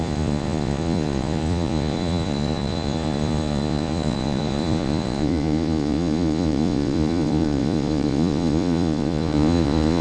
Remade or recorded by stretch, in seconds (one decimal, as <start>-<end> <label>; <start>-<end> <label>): 0.0-10.0 remade